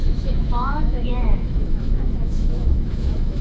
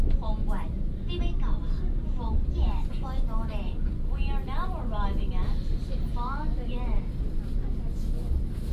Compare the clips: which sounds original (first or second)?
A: second